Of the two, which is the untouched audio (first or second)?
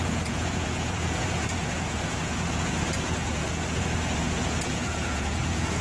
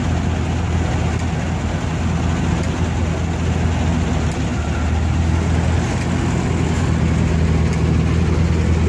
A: second